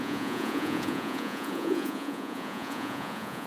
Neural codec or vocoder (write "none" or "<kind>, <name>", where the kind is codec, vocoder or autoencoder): vocoder, Vocos